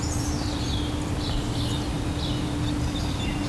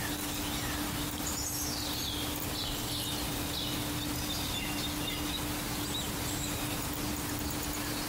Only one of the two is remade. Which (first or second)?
first